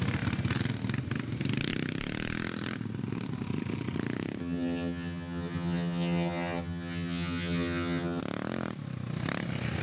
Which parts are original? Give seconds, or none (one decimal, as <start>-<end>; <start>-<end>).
0.0-4.4; 8.2-9.8